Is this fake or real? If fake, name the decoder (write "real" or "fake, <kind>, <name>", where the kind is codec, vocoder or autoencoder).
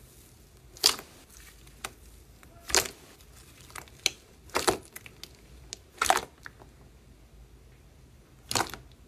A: real